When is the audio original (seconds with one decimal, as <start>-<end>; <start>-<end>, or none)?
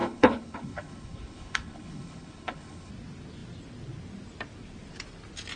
2.9-5.6